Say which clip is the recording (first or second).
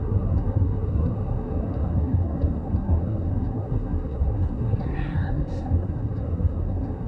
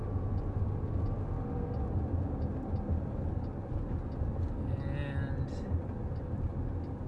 second